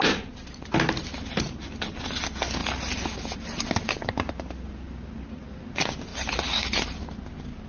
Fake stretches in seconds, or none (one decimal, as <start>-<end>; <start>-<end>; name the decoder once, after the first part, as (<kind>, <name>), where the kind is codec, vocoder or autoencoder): 2.6-5.6 (vocoder, BigVGAN v2); 6.1-7.0